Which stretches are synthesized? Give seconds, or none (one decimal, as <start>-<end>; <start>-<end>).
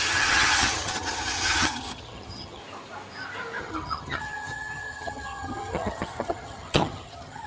0.0-2.6; 3.6-7.5